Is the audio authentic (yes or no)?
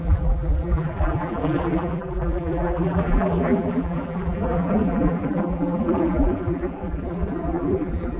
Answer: no